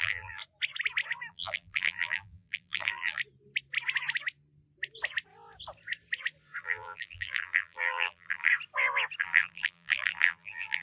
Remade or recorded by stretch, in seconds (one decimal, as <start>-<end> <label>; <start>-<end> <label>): 0.0-0.4 remade; 0.4-1.3 recorded; 1.3-3.2 remade; 3.2-6.6 recorded; 6.6-8.5 remade; 8.5-9.2 recorded; 9.2-10.8 remade